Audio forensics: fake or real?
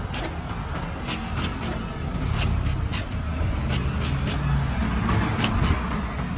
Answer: real